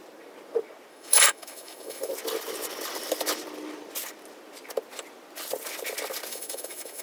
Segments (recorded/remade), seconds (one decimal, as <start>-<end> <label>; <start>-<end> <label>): 0.0-0.9 recorded; 0.9-2.1 remade; 2.1-6.3 recorded; 6.3-7.0 remade